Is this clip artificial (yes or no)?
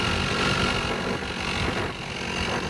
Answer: no